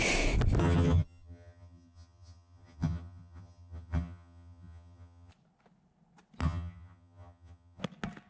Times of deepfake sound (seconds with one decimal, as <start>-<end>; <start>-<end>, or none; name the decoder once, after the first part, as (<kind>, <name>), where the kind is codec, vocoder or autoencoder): 0.6-5.3 (vocoder, HiFi-GAN); 6.4-7.8